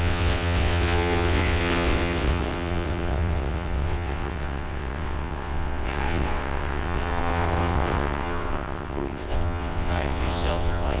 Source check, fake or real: fake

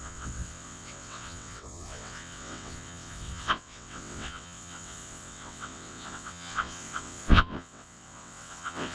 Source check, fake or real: fake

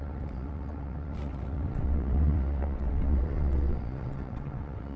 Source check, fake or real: fake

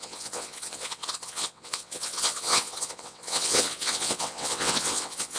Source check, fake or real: fake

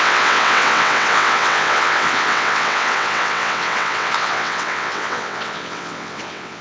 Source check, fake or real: fake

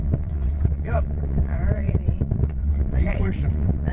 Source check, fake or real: fake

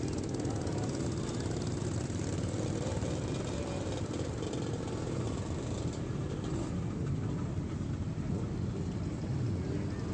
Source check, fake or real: real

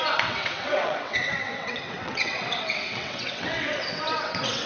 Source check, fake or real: fake